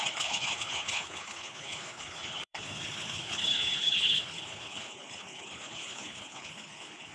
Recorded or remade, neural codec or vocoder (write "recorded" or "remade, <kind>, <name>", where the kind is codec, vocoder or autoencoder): remade, codec, HILCodec